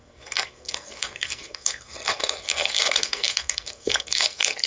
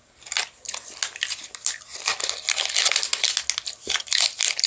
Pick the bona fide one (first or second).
second